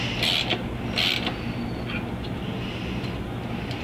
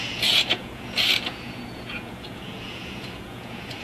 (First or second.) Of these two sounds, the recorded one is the first